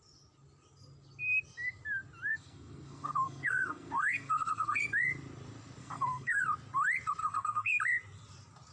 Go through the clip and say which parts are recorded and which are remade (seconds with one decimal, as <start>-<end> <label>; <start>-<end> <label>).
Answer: 0.0-2.3 recorded; 2.3-5.0 remade; 5.0-5.8 recorded; 5.8-6.4 remade; 6.4-7.2 recorded; 7.2-7.8 remade; 7.8-8.7 recorded